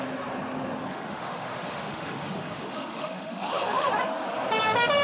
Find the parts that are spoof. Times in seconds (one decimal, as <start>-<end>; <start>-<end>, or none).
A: 0.9-3.9